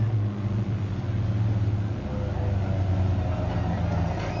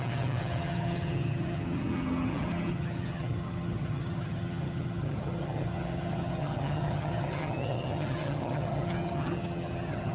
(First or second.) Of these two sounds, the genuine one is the first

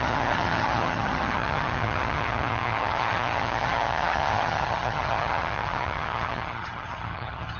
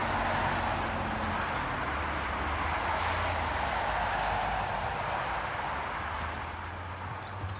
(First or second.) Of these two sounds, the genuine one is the second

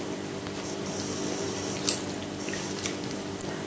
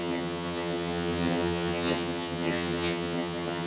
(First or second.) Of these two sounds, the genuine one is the first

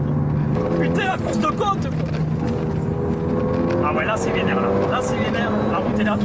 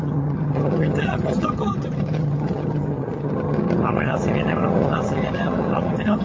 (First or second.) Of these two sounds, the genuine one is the first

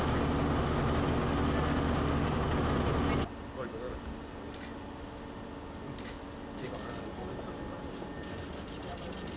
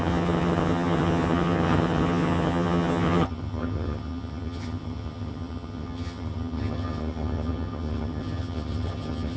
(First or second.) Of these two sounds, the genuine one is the first